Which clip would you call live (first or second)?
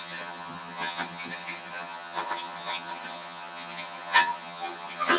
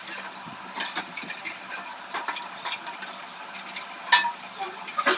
second